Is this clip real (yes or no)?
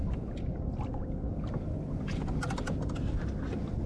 yes